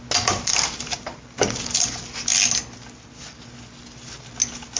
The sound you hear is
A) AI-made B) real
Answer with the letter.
B